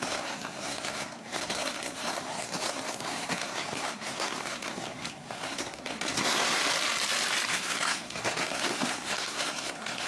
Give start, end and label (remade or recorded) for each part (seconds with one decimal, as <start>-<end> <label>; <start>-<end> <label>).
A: 0.0-6.6 remade; 6.6-7.5 recorded; 7.5-10.1 remade